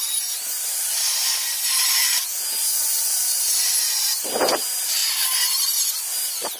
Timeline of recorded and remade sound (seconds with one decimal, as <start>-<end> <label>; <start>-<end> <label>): 0.0-6.6 recorded